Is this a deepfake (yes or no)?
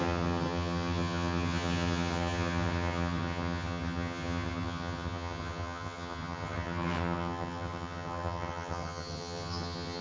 yes